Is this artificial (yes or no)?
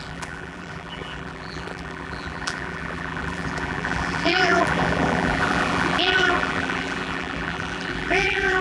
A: yes